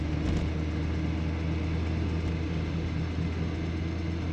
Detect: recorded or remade recorded